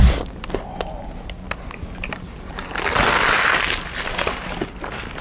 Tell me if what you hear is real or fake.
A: real